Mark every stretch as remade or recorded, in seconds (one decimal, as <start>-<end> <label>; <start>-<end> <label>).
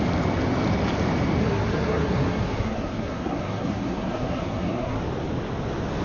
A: 0.0-1.4 recorded; 1.4-5.0 remade; 5.0-6.0 recorded